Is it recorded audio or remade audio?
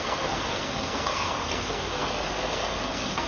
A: remade